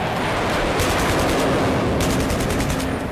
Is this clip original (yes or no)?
yes